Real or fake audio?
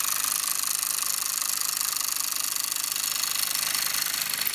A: real